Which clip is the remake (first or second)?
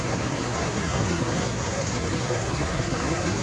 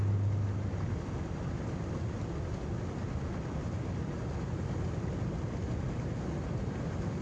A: first